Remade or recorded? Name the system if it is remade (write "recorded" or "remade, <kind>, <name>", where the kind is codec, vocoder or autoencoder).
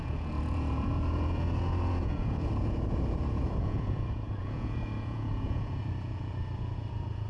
remade, vocoder, Vocos